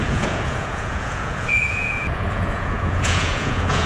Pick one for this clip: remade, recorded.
remade